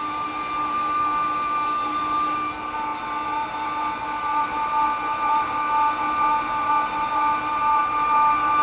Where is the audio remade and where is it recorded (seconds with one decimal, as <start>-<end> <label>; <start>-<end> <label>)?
0.0-8.6 recorded